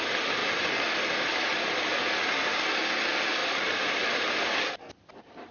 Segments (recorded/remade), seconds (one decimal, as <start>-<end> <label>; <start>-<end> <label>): 0.0-0.4 recorded; 0.4-1.5 remade; 1.5-3.4 recorded; 3.4-4.2 remade; 4.2-5.5 recorded